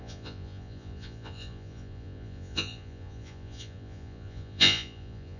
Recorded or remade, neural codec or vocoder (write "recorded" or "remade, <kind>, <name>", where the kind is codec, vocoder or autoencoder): remade, vocoder, Vocos